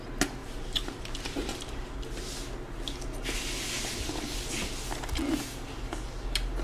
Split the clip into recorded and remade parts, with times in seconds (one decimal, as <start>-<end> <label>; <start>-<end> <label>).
0.0-0.4 recorded; 0.4-2.1 remade; 2.1-6.6 recorded